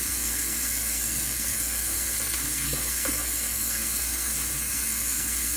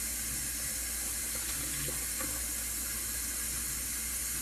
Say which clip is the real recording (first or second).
second